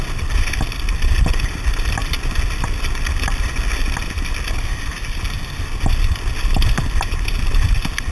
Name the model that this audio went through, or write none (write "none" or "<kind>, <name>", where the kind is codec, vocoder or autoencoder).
none